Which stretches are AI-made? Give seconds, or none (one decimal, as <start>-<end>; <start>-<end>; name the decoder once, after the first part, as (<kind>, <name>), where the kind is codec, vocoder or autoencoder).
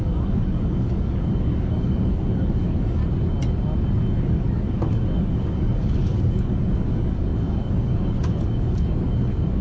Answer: 0.0-3.0 (codec, DAC); 4.2-9.6